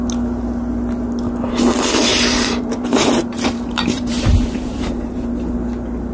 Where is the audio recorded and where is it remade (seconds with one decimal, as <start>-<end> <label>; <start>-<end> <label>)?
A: 0.0-2.1 recorded; 2.1-5.3 remade; 5.3-6.1 recorded